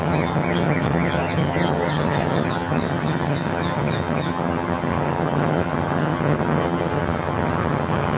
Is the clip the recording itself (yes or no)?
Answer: no